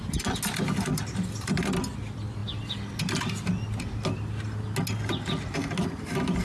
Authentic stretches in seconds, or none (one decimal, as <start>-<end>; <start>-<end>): 0.0-6.4